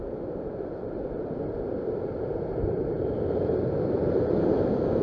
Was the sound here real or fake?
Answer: real